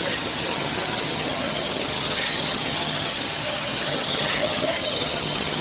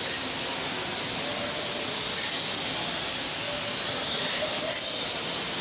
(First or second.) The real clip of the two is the second